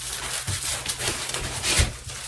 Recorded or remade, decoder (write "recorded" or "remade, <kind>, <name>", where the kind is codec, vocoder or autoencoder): recorded